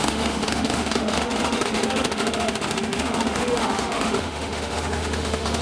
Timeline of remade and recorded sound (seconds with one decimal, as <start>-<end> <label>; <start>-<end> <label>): 0.0-5.6 remade